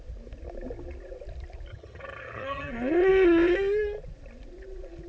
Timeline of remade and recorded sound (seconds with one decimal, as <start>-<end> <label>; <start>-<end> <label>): 0.0-1.7 recorded; 1.7-2.7 remade; 2.7-5.1 recorded